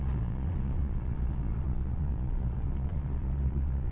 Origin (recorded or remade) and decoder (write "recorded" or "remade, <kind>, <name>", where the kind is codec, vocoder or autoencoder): remade, vocoder, Vocos